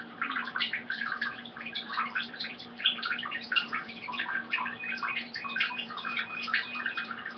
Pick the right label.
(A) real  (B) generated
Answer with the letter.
B